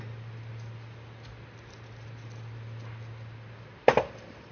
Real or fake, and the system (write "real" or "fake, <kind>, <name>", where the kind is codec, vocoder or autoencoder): real